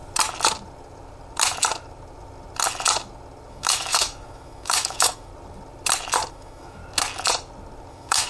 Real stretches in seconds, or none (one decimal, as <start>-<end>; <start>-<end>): 0.0-3.5; 5.3-6.3; 6.8-7.9